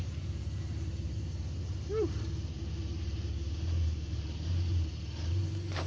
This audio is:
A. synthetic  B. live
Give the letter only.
A